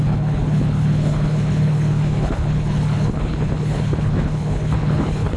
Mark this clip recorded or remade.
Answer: remade